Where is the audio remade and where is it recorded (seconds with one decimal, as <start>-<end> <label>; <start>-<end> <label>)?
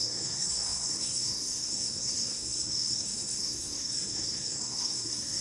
0.0-5.4 remade